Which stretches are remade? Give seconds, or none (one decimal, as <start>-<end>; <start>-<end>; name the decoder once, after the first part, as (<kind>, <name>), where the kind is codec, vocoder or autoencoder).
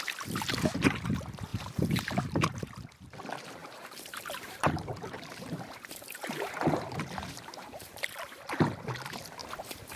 1.5-2.6 (vocoder, BigVGAN v2); 3.6-8.0; 9.4-10.0